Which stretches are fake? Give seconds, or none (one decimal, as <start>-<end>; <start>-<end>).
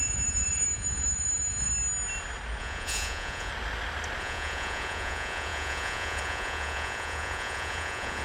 0.0-1.7; 2.6-3.5; 4.2-8.2